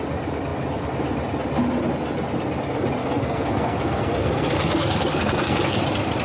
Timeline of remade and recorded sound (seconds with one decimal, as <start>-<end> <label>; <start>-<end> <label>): 0.0-3.0 recorded; 3.0-5.8 remade; 5.8-6.2 recorded